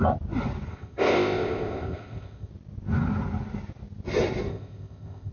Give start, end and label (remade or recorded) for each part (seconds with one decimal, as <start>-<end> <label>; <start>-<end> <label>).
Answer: 0.0-0.7 recorded; 0.7-2.5 remade; 2.5-4.5 recorded; 4.5-5.3 remade